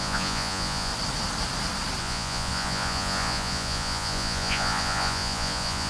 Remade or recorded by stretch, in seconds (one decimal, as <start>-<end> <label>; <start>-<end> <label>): 0.0-0.9 remade; 0.9-2.0 recorded; 2.0-5.9 remade